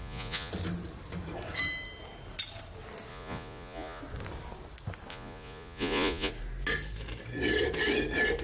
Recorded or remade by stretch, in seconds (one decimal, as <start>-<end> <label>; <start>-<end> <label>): 0.0-0.5 remade; 0.5-3.1 recorded; 3.1-4.0 remade; 4.0-5.1 recorded; 5.1-6.3 remade; 6.3-8.4 recorded